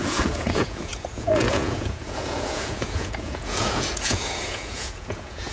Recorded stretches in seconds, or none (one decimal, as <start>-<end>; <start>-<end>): none